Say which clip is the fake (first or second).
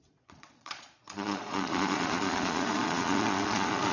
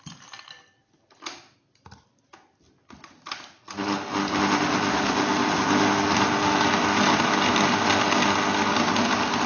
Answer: first